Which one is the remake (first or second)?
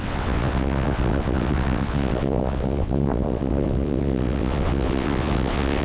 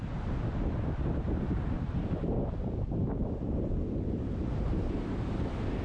first